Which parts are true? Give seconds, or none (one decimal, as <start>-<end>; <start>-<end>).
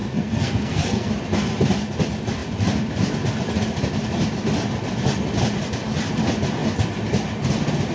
1.1-7.9